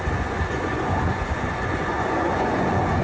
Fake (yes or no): yes